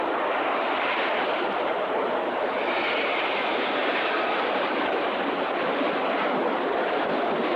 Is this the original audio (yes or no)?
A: yes